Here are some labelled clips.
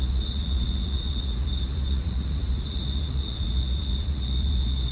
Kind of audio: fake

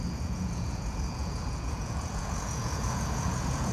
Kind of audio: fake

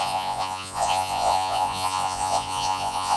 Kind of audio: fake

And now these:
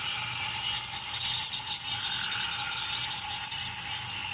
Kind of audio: real